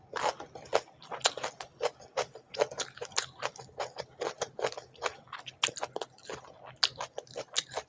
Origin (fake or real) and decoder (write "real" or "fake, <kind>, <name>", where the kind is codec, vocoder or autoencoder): real